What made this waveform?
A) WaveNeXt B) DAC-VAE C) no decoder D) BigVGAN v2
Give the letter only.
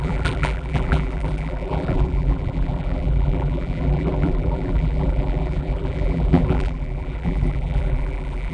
D